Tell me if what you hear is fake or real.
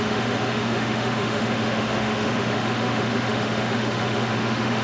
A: fake